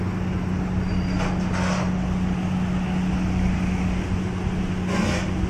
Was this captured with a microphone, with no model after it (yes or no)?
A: yes